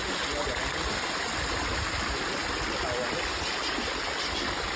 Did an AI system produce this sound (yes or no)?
no